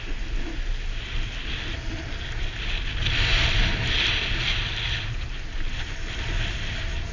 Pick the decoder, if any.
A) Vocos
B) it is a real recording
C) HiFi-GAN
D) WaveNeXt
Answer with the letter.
B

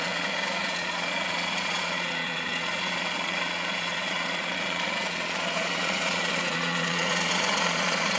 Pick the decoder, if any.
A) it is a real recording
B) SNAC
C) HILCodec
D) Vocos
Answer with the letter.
D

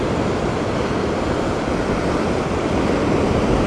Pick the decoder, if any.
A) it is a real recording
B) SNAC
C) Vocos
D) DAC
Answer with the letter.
A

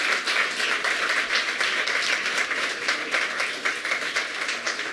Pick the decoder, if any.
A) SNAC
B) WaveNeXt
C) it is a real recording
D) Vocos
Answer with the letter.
C